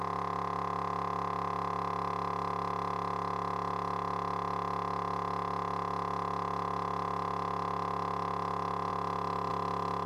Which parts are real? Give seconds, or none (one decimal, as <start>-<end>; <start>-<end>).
0.0-10.1